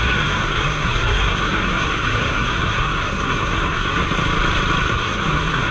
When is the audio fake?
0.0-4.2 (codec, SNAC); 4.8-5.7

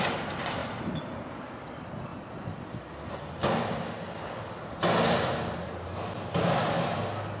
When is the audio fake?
none

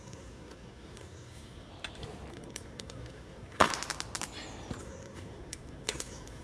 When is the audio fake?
0.0-1.7 (codec, SNAC); 2.3-3.7; 4.8-6.4